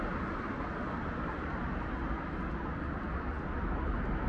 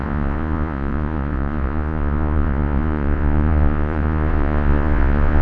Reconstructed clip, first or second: second